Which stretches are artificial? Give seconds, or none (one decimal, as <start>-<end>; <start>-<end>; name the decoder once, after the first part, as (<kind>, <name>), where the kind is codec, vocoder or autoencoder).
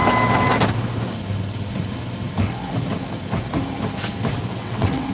4.6-5.1 (vocoder, WaveNeXt)